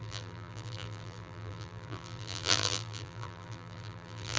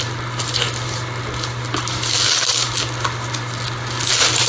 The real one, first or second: second